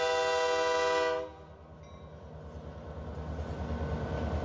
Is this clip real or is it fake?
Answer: real